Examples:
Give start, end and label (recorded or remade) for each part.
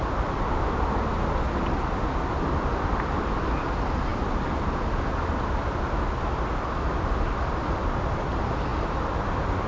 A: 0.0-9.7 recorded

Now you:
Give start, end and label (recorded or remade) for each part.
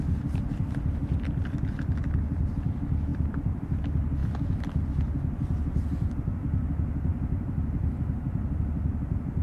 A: 0.0-3.1 recorded; 3.1-3.8 remade; 3.8-4.2 recorded; 4.2-4.9 remade; 4.9-9.4 recorded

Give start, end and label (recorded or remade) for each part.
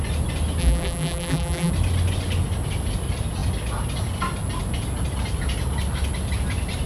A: 0.0-0.6 recorded; 0.6-1.7 remade; 1.7-6.9 recorded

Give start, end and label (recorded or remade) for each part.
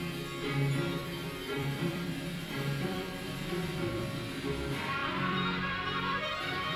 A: 0.0-1.0 recorded; 1.0-4.0 remade; 4.0-5.0 recorded; 5.0-6.8 remade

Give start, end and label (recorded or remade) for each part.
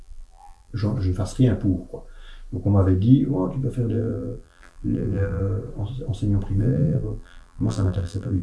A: 0.0-0.7 remade; 0.7-3.9 recorded; 3.9-5.4 remade; 5.4-6.6 recorded; 6.6-8.4 remade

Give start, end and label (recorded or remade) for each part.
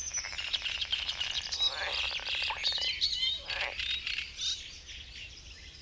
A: 0.0-1.7 remade; 1.7-2.6 recorded; 2.6-4.3 remade; 4.3-5.8 recorded